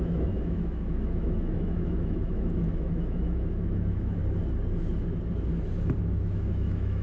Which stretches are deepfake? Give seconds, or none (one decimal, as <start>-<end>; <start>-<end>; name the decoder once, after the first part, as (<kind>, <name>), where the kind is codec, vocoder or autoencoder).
0.0-4.2 (autoencoder, DAC-VAE); 6.0-7.0